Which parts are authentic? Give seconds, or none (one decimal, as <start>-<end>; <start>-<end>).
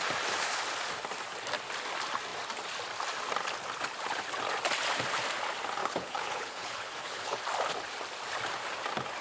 0.0-5.8; 7.4-9.2